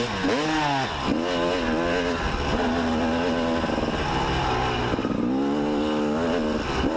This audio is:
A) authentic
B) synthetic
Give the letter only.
A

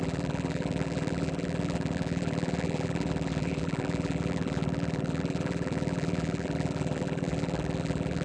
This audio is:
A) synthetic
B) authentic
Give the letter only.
A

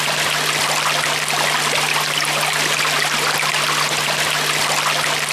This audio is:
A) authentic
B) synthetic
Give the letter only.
A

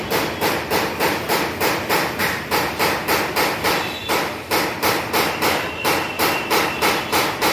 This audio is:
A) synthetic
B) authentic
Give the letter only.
A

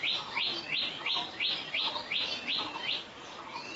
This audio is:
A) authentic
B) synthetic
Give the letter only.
A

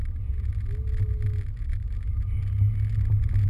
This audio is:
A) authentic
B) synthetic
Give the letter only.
A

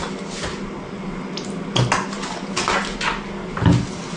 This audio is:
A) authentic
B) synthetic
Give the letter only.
A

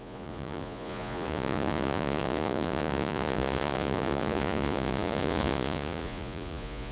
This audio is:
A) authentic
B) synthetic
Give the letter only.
B